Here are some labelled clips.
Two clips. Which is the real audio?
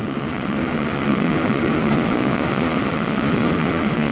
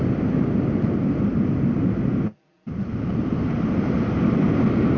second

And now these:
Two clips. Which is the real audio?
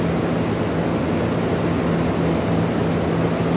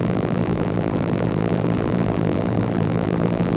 first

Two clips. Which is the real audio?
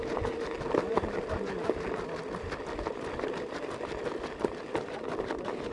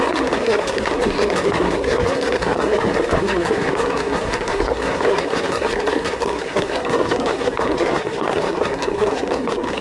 first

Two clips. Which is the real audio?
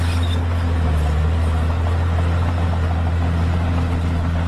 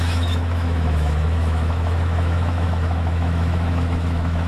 first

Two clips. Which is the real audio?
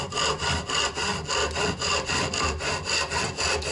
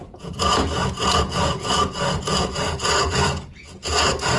first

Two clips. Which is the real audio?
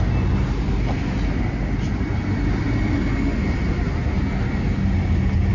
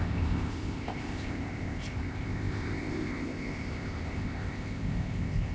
first